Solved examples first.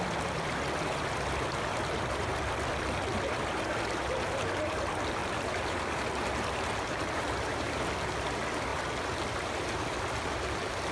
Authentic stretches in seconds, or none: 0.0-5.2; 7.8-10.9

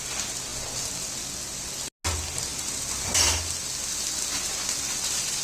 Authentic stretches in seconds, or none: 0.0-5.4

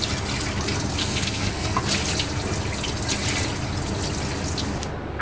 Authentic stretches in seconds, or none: 0.0-1.0; 1.8-5.2

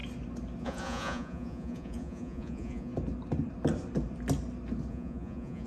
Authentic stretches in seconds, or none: 0.0-0.6; 2.9-4.9

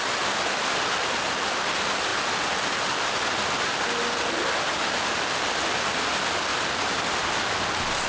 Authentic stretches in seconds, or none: 0.0-8.1

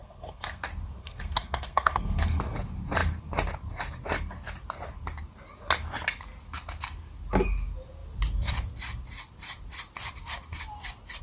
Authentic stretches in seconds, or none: 0.6-1.0; 2.4-11.2

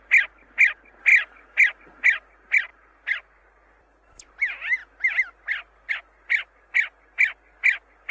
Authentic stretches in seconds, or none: 0.0-8.1

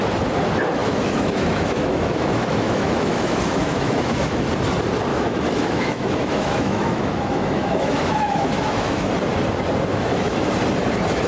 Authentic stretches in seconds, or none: 0.0-0.8; 4.5-5.1; 9.1-9.9; 10.5-11.3